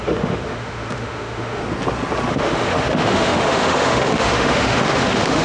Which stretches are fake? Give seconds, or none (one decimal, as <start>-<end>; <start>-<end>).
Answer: 0.0-1.6; 2.3-5.4